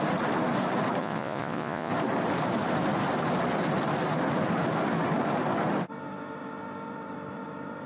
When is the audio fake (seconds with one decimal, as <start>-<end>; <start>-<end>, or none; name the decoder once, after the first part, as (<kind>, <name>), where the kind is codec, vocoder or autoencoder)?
1.0-1.9 (vocoder, Vocos)